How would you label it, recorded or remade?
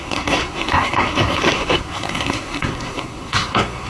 remade